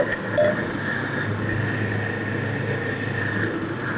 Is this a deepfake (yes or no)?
no